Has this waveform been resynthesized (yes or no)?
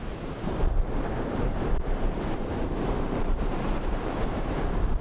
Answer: yes